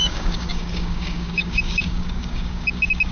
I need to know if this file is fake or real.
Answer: fake